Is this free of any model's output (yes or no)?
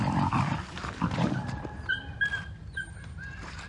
no